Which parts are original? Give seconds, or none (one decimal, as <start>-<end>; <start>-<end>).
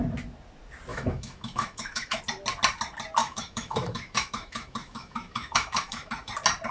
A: 0.0-0.9; 2.2-3.2; 6.3-6.7